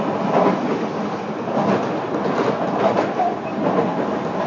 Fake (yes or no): no